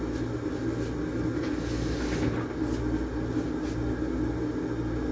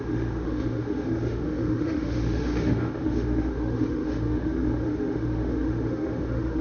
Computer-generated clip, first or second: second